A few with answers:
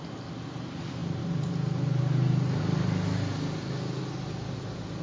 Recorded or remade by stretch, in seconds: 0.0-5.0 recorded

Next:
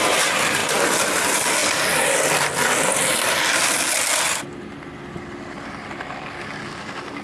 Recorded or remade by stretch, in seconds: 0.0-7.2 recorded

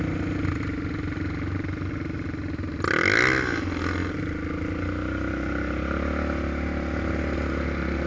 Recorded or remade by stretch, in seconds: 0.0-8.1 recorded

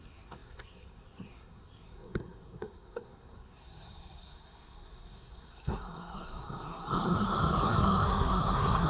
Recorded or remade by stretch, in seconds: 0.0-8.9 remade

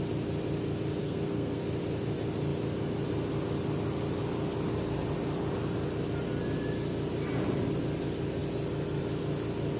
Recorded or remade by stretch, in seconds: 0.0-1.0 recorded; 1.0-1.6 remade; 1.6-9.8 recorded

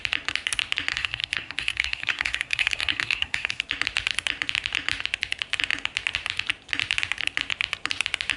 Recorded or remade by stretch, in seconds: 0.0-0.9 recorded; 0.9-3.6 remade; 3.6-8.4 recorded

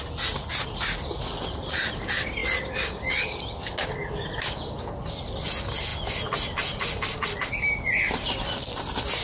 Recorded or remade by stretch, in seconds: 0.0-9.2 recorded